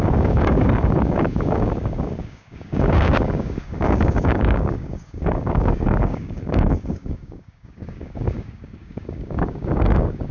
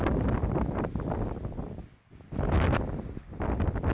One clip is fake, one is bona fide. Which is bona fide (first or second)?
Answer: second